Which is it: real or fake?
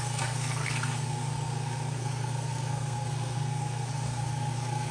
fake